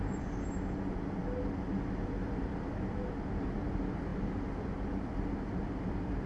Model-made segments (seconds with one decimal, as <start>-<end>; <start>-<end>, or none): none